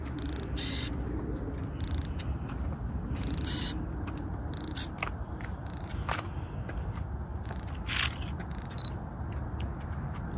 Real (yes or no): yes